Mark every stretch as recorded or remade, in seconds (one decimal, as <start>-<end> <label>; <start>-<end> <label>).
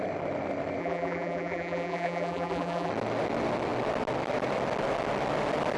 0.0-0.8 recorded; 0.8-2.9 remade; 2.9-5.8 recorded